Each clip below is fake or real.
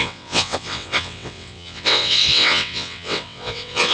fake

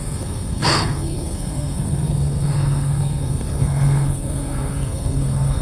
fake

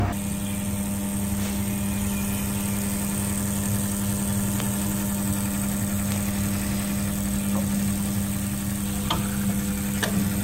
real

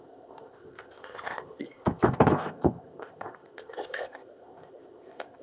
fake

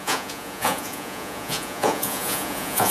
fake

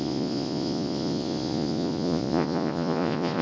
fake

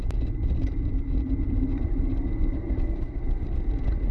fake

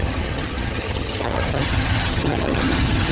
fake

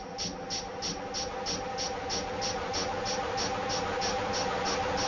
real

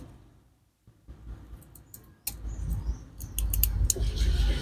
real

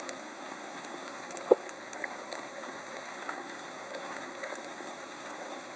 fake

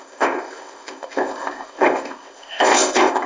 fake